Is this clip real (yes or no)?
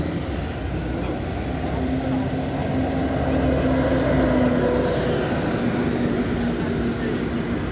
yes